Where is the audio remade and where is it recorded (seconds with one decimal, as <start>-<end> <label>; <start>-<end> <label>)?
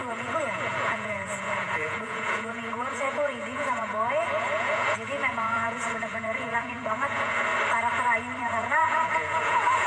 0.0-7.5 remade; 7.5-8.4 recorded; 8.4-9.9 remade